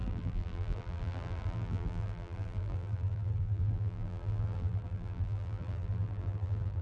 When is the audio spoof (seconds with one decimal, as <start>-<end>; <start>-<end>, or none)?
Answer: 0.0-6.8